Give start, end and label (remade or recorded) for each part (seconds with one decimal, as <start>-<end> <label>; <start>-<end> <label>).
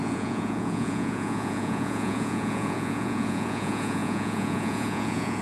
0.0-5.4 remade